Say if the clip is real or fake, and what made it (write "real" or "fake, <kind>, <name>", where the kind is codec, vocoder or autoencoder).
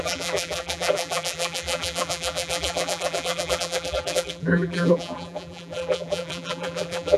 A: fake, vocoder, BigVGAN v2